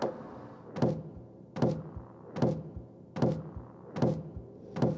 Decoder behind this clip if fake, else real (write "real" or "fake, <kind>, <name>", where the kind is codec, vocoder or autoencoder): real